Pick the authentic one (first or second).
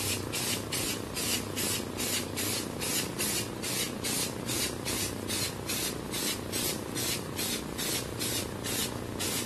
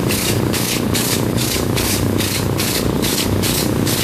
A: first